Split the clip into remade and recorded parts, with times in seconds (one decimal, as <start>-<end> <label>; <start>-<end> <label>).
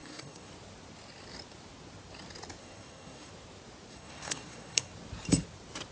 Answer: 0.0-0.5 remade; 0.5-2.6 recorded; 2.6-3.3 remade; 3.3-3.9 recorded; 3.9-4.9 remade; 4.9-5.9 recorded